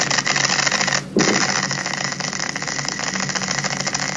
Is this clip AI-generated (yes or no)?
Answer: no